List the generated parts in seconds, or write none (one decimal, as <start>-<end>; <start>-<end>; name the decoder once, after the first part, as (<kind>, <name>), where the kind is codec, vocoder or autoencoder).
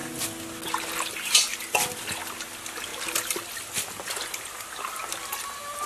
none